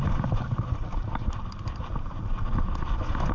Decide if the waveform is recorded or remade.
recorded